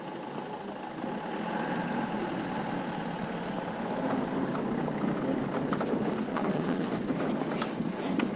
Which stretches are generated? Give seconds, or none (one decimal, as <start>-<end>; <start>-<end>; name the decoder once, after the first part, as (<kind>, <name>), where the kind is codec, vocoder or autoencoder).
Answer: 6.3-6.9 (vocoder, Vocos)